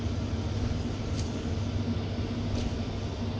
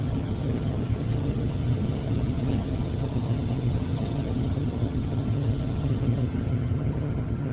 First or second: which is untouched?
first